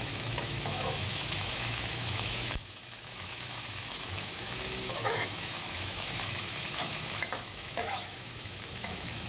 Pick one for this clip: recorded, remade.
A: remade